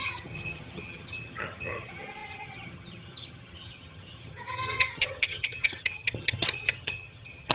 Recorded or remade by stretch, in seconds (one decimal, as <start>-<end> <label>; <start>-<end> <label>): 0.0-7.5 remade